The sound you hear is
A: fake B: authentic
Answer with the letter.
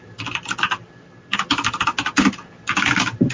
B